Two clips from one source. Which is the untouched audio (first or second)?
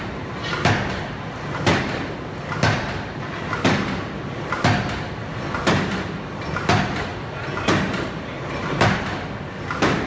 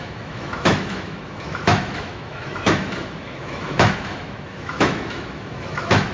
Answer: first